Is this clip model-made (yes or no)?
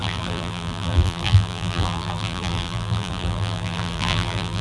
yes